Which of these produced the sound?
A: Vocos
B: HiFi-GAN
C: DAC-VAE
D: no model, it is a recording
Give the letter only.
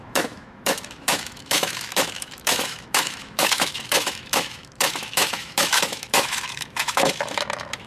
C